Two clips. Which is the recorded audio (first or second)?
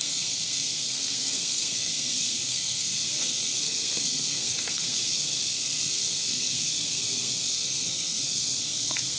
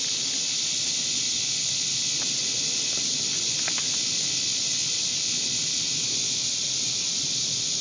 second